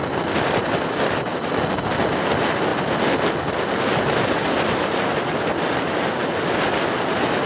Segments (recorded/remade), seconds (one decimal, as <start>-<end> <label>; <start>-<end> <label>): 0.0-0.7 remade; 0.7-7.5 recorded